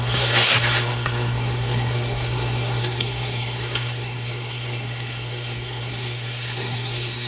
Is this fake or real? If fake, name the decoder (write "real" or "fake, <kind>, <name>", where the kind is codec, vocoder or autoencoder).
fake, codec, SNAC